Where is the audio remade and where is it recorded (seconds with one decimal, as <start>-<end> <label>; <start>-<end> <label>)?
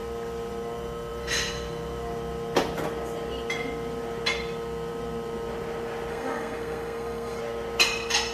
0.0-6.1 recorded; 6.1-7.4 remade; 7.4-8.3 recorded